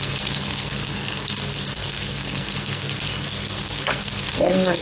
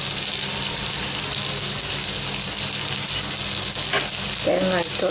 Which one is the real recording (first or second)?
second